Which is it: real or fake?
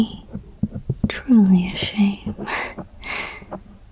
real